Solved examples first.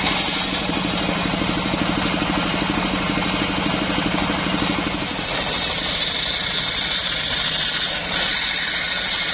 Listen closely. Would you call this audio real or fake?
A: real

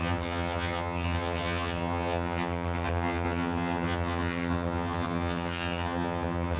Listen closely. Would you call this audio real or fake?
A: fake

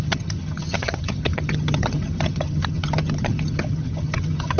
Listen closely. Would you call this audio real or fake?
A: fake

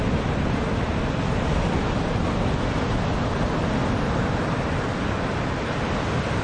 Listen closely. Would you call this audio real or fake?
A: real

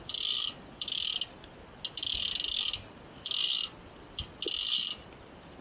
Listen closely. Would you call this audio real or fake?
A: real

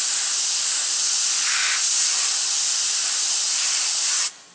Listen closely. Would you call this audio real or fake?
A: real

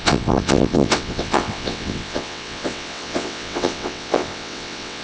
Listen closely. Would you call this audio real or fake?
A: fake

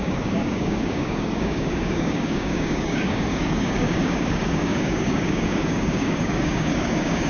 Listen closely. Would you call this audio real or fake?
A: fake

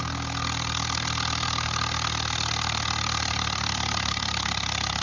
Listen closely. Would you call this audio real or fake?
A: real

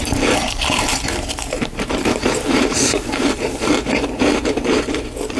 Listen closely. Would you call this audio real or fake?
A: fake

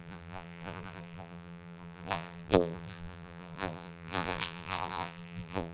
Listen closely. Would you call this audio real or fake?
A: fake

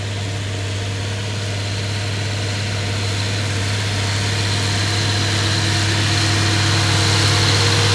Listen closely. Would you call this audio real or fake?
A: real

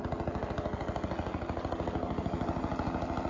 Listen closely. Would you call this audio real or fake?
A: real